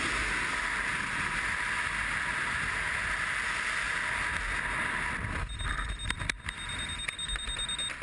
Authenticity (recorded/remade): recorded